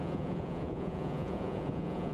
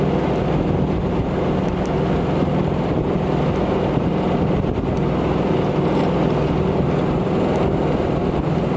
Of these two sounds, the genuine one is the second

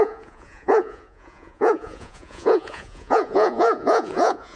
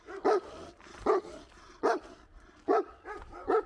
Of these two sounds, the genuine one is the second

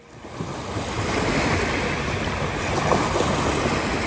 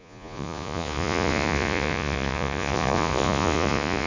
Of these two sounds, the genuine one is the first